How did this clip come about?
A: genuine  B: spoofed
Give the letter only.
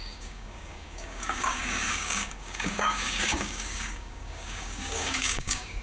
B